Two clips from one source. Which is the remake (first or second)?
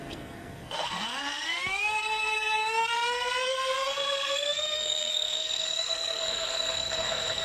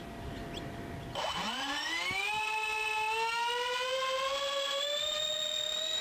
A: first